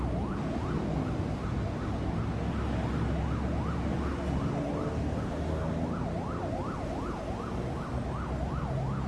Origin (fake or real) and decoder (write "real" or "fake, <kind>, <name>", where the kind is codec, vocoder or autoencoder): real